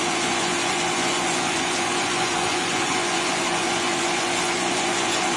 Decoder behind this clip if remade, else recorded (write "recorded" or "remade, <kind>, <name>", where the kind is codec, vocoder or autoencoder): remade, vocoder, Vocos